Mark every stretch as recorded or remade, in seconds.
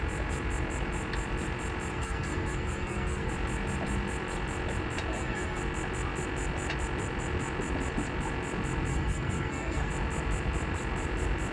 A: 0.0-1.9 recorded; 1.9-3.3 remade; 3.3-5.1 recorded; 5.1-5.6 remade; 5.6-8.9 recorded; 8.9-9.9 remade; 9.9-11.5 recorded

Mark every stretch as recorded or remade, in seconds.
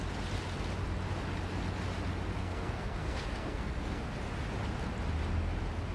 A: 0.0-2.4 recorded; 2.4-4.0 remade; 4.0-5.9 recorded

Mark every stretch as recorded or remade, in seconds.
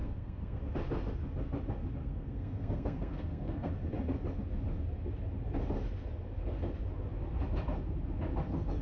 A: 0.0-0.6 remade; 0.6-2.0 recorded; 2.0-3.7 remade; 3.7-8.8 recorded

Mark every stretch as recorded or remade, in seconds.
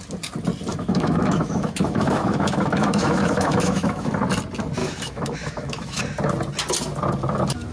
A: 0.0-0.7 recorded; 0.7-4.1 remade; 4.1-4.8 recorded; 4.8-6.0 remade; 6.0-7.7 recorded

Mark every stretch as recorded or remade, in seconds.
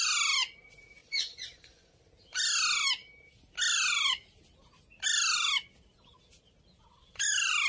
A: 0.0-1.0 recorded; 1.0-1.9 remade; 1.9-7.7 recorded